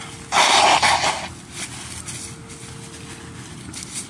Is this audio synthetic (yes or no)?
no